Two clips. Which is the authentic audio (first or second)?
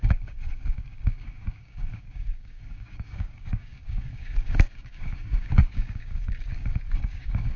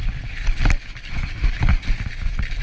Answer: second